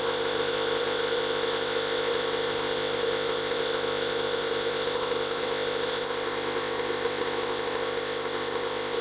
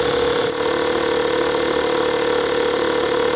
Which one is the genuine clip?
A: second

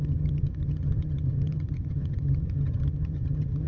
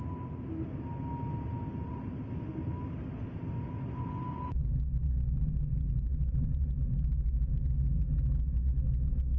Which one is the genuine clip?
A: second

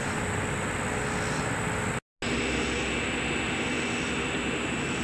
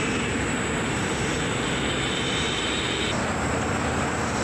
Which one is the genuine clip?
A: first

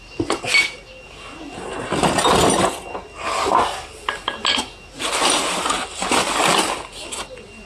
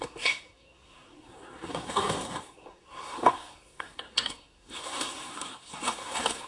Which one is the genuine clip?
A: first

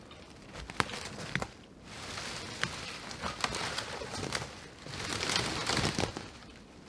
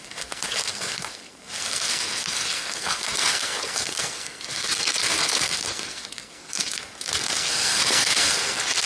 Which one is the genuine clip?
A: first